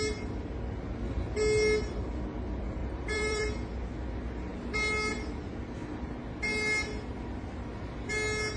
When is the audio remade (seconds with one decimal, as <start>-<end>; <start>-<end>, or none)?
2.8-3.4